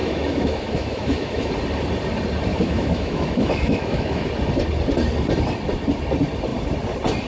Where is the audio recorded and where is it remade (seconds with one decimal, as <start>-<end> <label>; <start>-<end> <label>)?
0.0-1.5 remade; 1.5-2.5 recorded; 2.5-4.3 remade; 4.3-7.3 recorded